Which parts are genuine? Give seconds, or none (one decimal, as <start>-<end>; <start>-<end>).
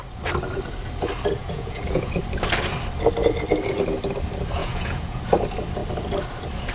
0.0-1.4; 2.1-4.6; 5.2-6.7